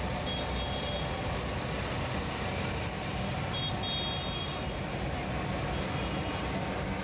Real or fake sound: real